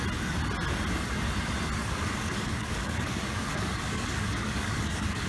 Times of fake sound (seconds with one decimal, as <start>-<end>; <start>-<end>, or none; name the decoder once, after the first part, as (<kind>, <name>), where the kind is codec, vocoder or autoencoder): 1.8-5.3 (codec, DAC)

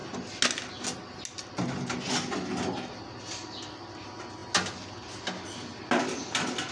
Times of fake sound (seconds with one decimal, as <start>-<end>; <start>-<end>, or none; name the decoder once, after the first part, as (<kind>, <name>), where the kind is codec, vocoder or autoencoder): none

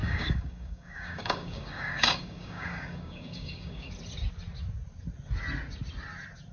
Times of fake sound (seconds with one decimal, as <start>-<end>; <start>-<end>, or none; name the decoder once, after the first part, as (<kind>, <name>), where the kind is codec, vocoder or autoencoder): 0.0-3.9 (codec, DAC)

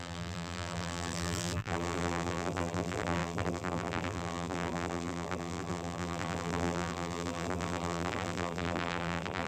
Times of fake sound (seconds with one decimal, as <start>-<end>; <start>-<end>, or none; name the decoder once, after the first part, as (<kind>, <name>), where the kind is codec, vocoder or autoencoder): 0.0-9.5 (vocoder, BigVGAN v2)

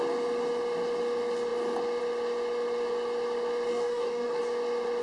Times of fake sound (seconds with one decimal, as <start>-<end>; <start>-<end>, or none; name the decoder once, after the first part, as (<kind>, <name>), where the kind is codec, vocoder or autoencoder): 3.7-4.4 (codec, DAC)